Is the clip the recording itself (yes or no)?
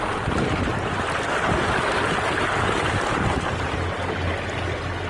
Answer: yes